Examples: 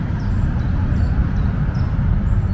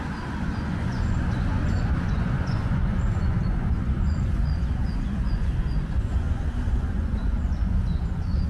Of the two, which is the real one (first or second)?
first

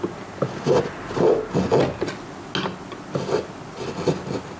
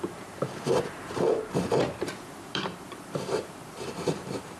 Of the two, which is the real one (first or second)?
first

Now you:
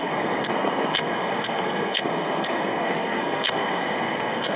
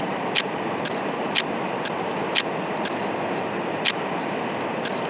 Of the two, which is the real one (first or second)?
second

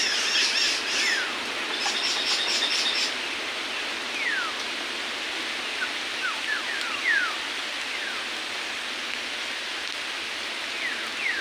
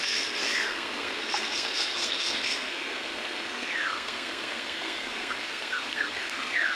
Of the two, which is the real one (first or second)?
first